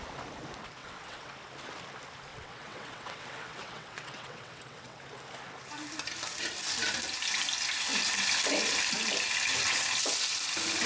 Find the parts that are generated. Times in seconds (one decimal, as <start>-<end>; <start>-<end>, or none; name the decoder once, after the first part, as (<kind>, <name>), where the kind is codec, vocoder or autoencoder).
0.8-1.3 (vocoder, WaveNeXt); 2.3-5.0